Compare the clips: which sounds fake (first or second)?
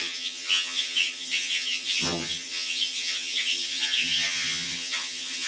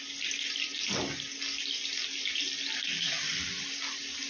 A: first